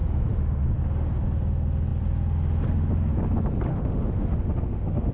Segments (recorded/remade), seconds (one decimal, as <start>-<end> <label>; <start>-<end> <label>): 0.0-0.6 remade; 0.6-3.7 recorded; 3.7-5.1 remade